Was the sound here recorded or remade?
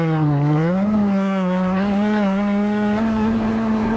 remade